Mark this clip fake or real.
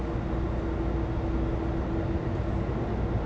real